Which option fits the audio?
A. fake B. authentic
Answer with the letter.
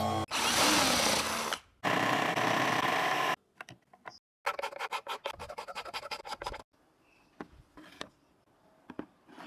B